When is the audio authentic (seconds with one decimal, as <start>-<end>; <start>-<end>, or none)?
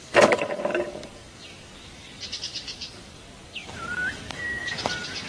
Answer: none